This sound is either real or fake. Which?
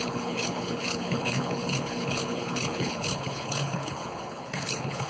fake